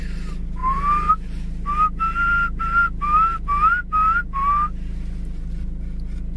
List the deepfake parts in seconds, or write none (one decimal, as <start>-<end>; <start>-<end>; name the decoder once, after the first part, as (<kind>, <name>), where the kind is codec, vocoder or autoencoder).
0.6-1.1 (vocoder, BigVGAN v2)